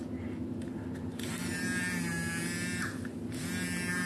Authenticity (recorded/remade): recorded